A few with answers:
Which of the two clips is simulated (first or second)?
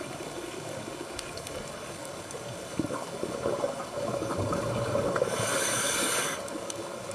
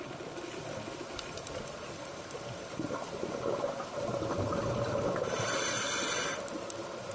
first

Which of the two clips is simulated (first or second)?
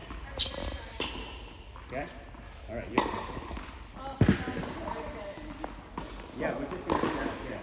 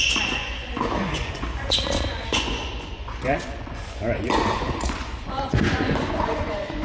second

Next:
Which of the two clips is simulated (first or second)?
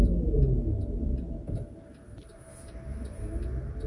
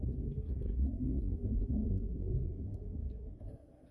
second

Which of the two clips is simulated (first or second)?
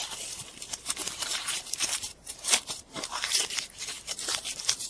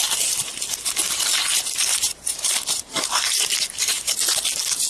first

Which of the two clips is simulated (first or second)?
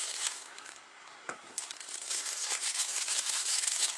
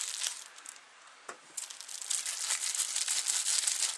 first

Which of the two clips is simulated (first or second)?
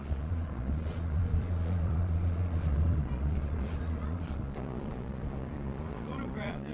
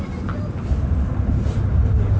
first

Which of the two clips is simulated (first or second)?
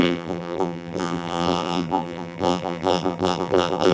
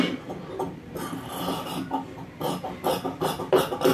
first